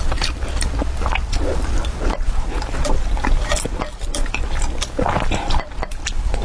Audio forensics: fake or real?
real